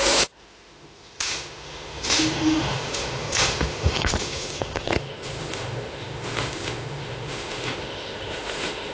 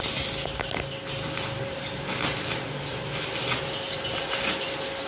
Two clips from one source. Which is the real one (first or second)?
second